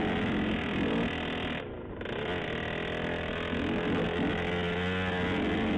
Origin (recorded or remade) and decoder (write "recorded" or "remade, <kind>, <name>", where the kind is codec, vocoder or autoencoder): recorded